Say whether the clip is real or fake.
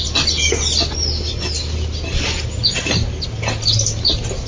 real